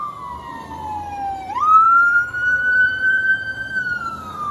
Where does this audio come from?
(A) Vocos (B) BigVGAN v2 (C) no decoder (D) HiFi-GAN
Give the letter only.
B